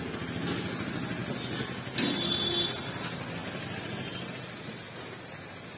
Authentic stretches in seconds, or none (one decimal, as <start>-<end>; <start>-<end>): 0.0-5.8